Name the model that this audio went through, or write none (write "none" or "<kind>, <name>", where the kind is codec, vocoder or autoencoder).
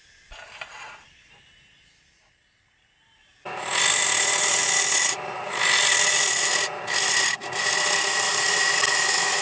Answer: none